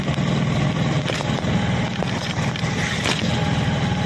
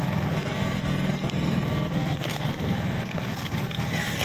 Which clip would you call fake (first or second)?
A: second